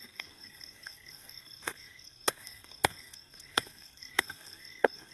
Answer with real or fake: fake